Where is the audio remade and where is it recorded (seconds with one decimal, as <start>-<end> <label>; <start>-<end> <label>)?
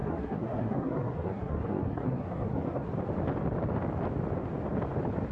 0.0-2.9 remade; 2.9-5.3 recorded